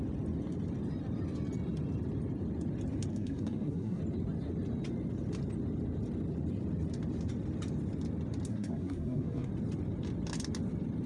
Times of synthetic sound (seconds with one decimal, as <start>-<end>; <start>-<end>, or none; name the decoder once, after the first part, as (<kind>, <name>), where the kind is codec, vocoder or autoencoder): 3.1-4.0 (codec, SNAC); 8.5-9.5